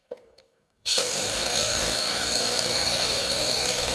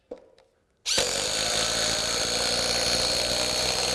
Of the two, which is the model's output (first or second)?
first